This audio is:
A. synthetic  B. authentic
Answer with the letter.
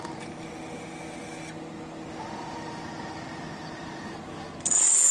B